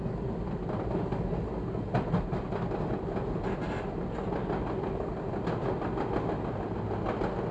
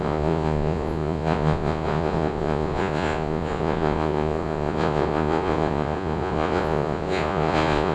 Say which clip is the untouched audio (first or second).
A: first